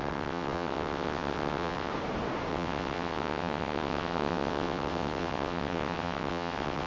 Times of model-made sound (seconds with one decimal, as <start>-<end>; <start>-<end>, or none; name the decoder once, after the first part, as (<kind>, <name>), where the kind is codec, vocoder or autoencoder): 0.0-1.9 (vocoder, WaveNeXt); 2.5-6.9